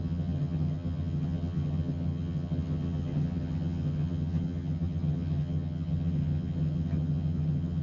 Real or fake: fake